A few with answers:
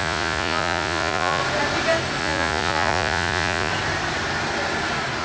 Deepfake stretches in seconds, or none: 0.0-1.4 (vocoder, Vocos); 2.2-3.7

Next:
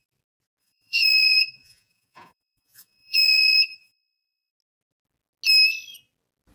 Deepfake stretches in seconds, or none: 0.6-4.5 (vocoder, Vocos)